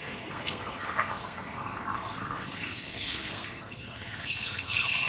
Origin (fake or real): fake